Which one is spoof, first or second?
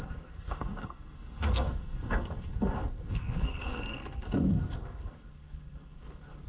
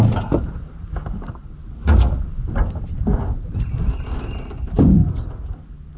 first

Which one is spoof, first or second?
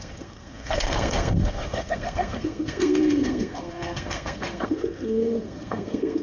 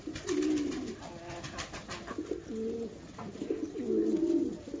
first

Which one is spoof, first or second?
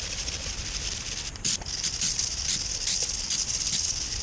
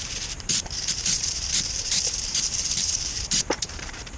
second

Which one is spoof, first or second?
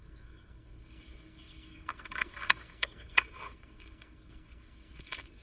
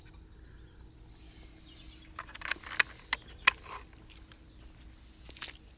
first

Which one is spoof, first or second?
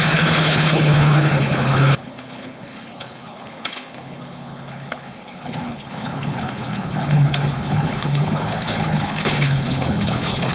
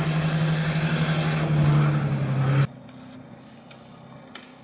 first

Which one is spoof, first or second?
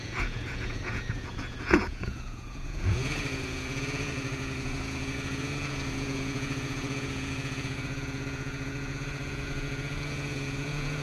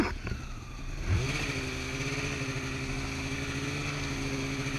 first